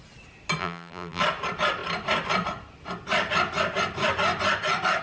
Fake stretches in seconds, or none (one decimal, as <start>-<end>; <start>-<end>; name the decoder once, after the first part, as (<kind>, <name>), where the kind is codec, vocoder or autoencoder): 0.6-1.2 (vocoder, BigVGAN v2)